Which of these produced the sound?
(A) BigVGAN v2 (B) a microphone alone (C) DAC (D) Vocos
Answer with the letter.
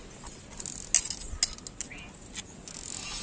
B